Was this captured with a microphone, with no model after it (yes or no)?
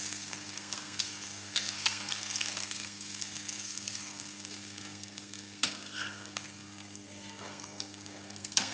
no